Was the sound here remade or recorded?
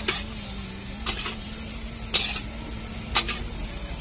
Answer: recorded